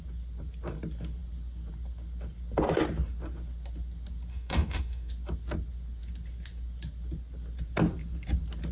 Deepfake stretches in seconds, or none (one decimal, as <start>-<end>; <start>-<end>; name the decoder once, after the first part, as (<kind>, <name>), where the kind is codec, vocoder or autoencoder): 4.3-5.1 (codec, DAC)